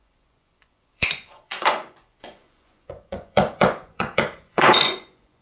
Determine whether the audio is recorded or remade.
remade